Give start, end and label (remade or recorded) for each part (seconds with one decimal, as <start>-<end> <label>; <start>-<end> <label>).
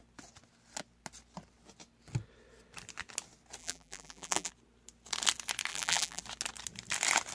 0.0-3.6 recorded; 3.6-4.5 remade; 4.5-5.7 recorded; 5.7-6.2 remade; 6.2-7.3 recorded